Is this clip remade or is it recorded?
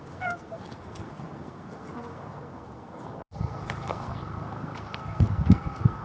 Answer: remade